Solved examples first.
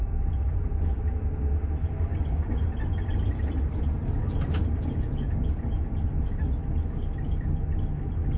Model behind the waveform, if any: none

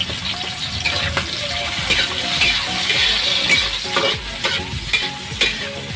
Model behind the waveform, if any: none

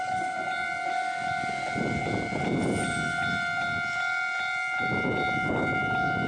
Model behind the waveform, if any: none